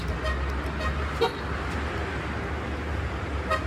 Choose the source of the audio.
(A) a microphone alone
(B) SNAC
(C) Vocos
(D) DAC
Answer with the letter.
A